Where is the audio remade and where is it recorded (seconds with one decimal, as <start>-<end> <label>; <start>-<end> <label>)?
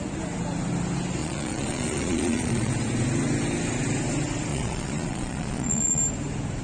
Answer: 0.0-1.2 recorded; 1.2-2.7 remade; 2.7-4.5 recorded; 4.5-6.0 remade; 6.0-6.6 recorded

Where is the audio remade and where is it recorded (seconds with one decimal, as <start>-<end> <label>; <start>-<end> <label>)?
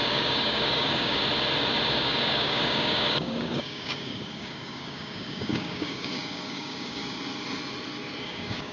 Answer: 0.0-1.2 remade; 1.2-1.9 recorded; 1.9-7.0 remade; 7.0-8.2 recorded; 8.2-8.7 remade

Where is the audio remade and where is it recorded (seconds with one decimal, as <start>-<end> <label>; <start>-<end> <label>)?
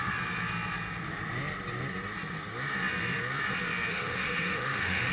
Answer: 0.0-3.9 recorded; 3.9-5.1 remade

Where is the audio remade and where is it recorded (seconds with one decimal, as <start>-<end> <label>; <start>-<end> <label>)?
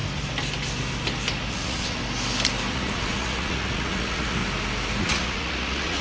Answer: 0.0-1.5 recorded; 1.5-2.0 remade; 2.0-2.7 recorded; 2.7-4.4 remade; 4.4-5.0 recorded; 5.0-6.0 remade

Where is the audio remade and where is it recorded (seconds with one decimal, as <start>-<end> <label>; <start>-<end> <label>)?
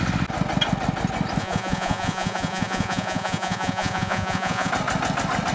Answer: 0.0-1.4 recorded; 1.4-4.7 remade; 4.7-5.5 recorded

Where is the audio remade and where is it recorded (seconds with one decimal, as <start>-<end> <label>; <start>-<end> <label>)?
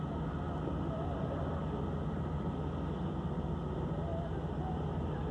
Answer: 0.0-5.3 recorded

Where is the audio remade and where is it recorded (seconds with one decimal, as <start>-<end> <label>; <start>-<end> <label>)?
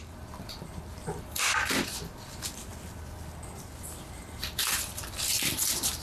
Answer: 0.0-2.7 remade; 2.7-4.4 recorded; 4.4-6.0 remade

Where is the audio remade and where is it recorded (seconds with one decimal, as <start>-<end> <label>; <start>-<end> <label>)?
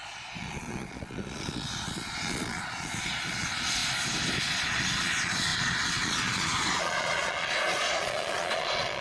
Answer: 0.0-3.8 remade; 3.8-4.4 recorded; 4.4-9.0 remade